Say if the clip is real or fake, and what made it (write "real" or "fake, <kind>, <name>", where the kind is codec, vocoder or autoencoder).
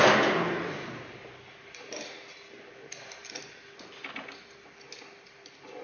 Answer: real